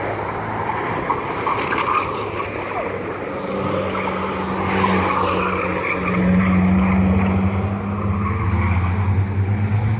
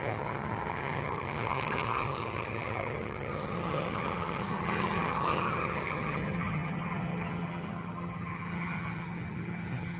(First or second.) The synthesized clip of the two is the second